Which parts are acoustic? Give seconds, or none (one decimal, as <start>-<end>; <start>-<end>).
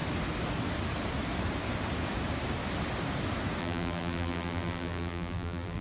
0.0-3.6